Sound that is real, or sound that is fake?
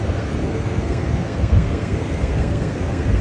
fake